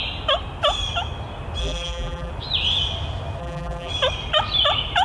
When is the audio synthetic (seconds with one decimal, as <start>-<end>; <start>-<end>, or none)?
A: 1.6-2.3; 3.4-3.9